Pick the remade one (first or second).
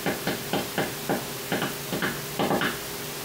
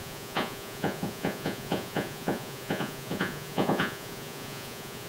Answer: second